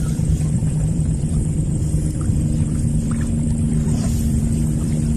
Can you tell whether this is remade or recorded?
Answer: remade